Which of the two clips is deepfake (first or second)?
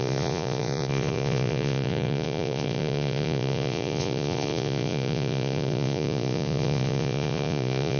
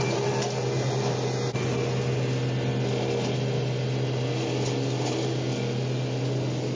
first